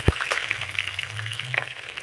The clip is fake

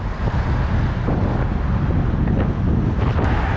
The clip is real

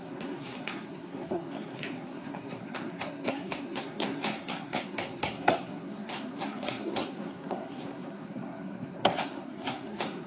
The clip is fake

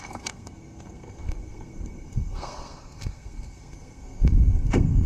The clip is fake